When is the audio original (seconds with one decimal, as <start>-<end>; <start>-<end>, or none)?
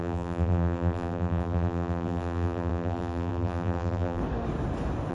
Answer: 4.2-5.1